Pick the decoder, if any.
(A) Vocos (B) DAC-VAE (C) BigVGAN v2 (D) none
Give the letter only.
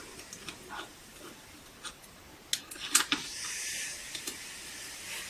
D